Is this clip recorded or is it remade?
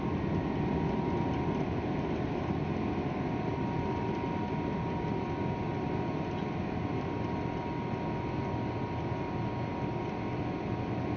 recorded